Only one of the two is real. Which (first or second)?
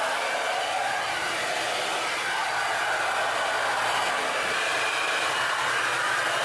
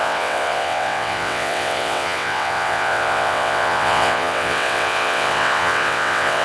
first